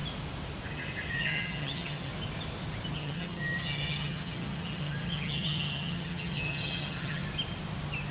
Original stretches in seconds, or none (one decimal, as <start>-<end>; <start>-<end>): 0.0-1.1; 2.1-3.0; 7.2-8.1